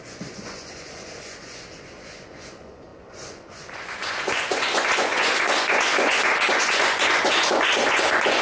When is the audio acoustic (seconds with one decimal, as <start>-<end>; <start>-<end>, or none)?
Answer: none